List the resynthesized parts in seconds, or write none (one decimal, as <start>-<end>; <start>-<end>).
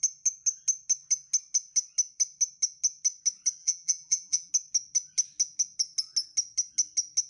3.6-4.5